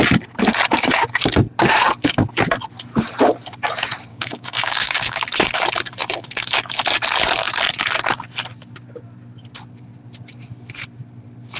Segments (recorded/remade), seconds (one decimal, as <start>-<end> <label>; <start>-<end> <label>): 0.0-4.1 recorded; 4.1-5.2 remade; 5.2-11.6 recorded